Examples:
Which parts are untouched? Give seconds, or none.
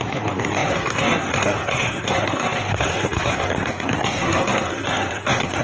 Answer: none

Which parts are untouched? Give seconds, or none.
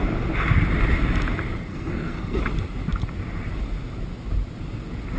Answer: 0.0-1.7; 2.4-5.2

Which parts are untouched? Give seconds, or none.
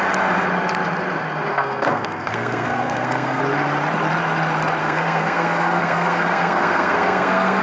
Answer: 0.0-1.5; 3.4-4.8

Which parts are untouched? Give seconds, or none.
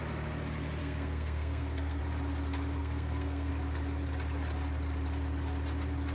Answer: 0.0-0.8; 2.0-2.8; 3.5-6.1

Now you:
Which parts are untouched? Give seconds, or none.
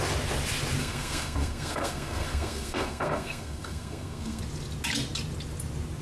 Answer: 0.0-0.8; 4.4-6.0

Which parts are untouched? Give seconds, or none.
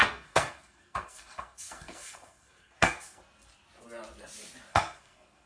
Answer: 3.2-4.7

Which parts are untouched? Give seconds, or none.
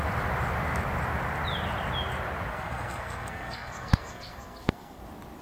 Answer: 0.0-2.5; 5.0-5.4